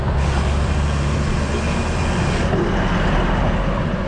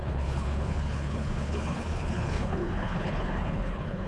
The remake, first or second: second